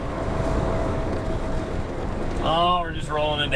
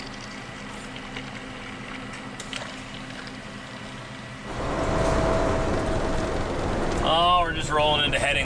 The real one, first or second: second